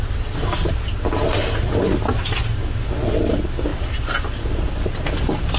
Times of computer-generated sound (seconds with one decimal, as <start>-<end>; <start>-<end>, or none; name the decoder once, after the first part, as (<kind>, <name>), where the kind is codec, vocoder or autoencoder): none